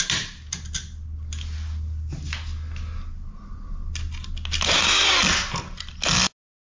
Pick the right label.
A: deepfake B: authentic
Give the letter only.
B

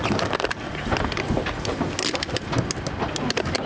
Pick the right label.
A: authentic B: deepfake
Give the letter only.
A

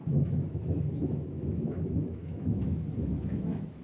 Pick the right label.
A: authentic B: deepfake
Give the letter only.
B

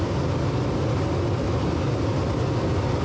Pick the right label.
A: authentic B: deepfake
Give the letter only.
A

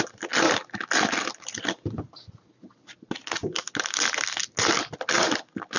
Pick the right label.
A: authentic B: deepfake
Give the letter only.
A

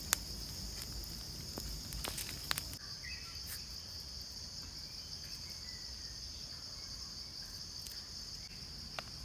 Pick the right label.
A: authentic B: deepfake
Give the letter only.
A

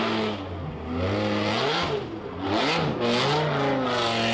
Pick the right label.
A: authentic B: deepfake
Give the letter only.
A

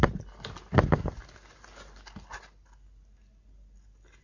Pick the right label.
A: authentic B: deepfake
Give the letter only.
A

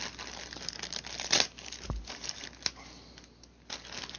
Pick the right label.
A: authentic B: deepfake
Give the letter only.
A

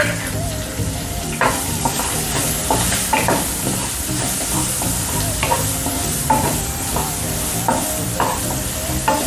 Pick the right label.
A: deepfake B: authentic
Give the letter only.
A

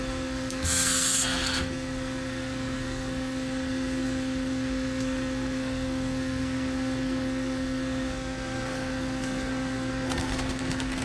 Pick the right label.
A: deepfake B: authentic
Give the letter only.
A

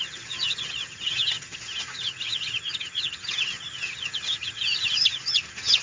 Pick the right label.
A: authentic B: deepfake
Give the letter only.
B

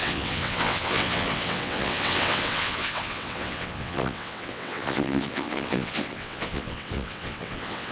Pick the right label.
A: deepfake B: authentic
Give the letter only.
A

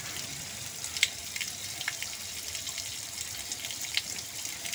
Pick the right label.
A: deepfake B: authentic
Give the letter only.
B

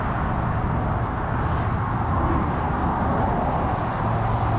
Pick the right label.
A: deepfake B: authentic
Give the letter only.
B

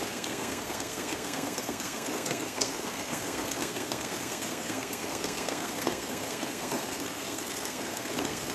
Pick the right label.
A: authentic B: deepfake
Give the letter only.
B